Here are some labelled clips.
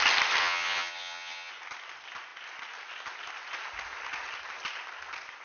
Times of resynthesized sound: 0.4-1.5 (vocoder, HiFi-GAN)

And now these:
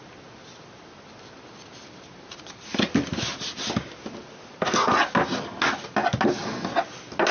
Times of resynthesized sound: none

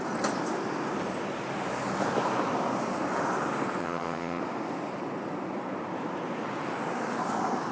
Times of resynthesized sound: 3.8-4.4 (vocoder, HiFi-GAN)

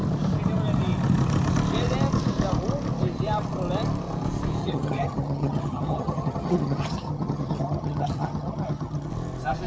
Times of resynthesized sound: 4.6-9.1 (vocoder, HiFi-GAN)

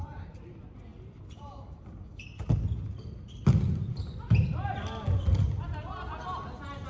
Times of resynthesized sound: none

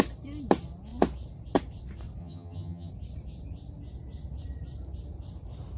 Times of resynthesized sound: 2.2-2.9 (vocoder, HiFi-GAN)